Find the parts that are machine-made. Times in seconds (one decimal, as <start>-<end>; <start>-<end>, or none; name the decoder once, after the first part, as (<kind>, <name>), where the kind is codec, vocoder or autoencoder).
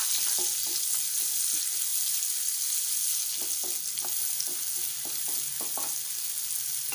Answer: none